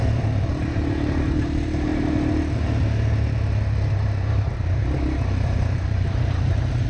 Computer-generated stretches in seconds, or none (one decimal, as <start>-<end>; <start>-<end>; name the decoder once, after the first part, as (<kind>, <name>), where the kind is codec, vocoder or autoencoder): 0.0-1.9 (vocoder, BigVGAN v2); 4.0-6.9